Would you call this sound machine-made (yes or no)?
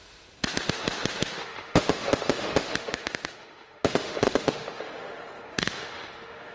yes